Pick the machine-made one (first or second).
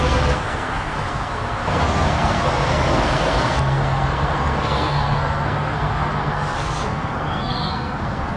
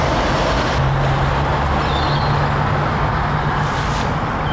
first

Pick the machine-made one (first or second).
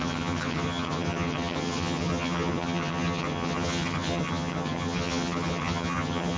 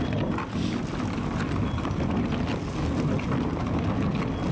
first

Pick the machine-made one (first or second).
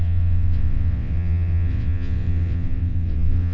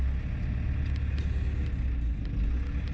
first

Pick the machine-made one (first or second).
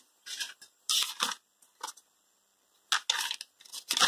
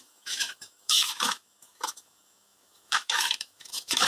second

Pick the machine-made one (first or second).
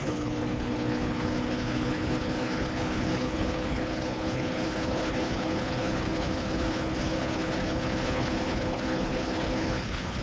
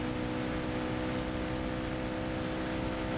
first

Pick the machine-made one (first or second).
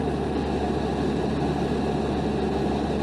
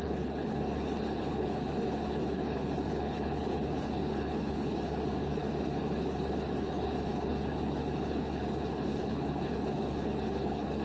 second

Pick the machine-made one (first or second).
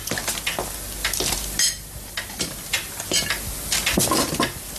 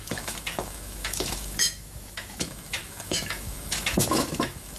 second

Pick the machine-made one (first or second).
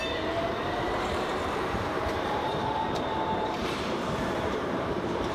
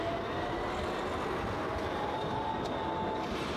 first